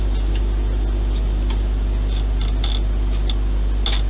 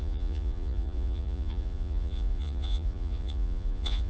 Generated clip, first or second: second